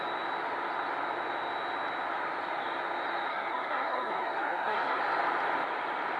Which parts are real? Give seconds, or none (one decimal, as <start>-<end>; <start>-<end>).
0.0-3.3; 5.0-6.2